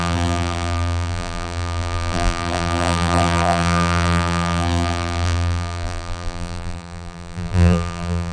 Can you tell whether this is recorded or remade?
remade